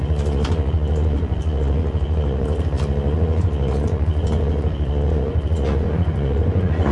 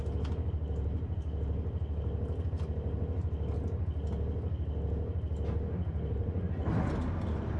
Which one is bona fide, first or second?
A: second